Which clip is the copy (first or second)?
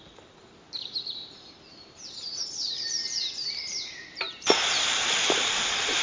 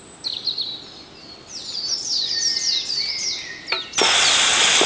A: first